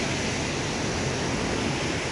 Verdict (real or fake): real